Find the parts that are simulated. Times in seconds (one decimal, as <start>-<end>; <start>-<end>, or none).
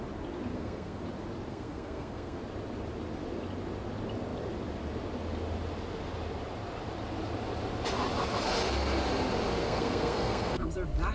0.5-1.0; 1.5-2.4; 9.6-10.7